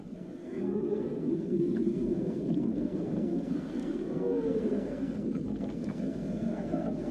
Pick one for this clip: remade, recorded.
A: remade